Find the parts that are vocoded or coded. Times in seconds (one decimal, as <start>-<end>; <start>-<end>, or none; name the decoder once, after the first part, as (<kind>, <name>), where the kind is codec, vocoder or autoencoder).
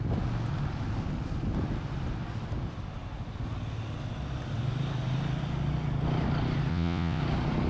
6.7-7.2 (vocoder, Vocos)